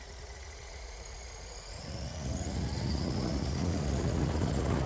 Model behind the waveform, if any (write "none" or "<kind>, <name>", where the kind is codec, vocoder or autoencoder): vocoder, Vocos